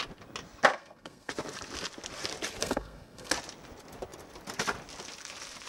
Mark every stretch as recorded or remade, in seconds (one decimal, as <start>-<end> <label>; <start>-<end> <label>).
0.0-0.7 recorded; 0.7-1.3 remade; 1.3-2.6 recorded; 2.6-3.3 remade; 3.3-5.7 recorded

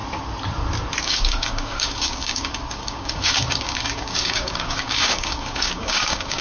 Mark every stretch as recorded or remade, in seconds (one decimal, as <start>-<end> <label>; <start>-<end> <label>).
0.0-1.0 recorded; 1.0-6.4 remade